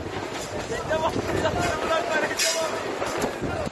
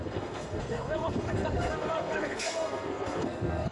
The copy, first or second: second